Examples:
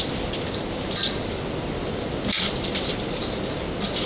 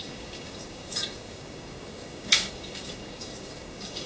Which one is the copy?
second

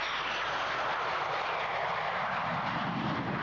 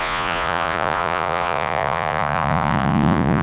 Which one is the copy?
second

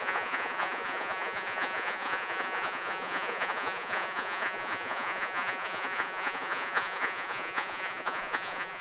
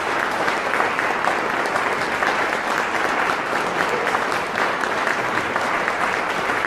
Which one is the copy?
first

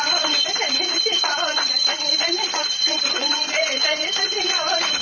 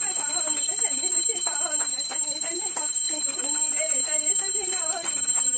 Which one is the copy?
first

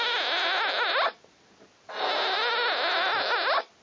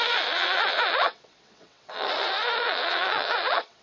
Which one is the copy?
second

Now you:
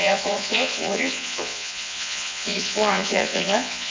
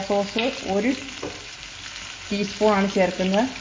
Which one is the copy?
first